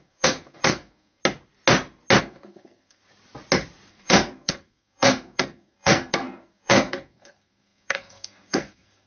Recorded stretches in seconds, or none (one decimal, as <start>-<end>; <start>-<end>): 1.2-2.2; 3.0-3.9